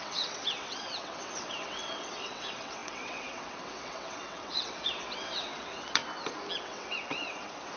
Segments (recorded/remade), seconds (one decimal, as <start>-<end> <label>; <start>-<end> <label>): 0.0-6.0 remade; 6.0-6.6 recorded; 6.6-7.8 remade